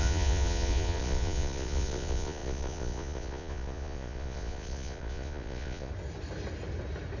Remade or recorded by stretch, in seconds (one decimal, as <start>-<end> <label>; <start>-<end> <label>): 0.0-5.9 remade; 5.9-7.2 recorded